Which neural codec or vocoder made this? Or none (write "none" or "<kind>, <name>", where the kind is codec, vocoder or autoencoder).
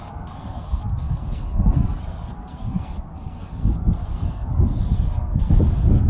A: codec, SNAC